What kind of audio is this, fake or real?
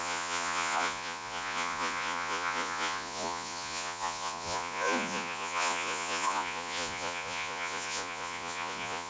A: fake